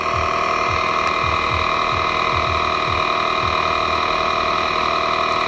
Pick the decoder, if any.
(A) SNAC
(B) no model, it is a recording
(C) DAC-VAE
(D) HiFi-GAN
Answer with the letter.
B